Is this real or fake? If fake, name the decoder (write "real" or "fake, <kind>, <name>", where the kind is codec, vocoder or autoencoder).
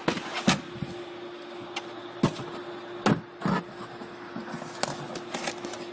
real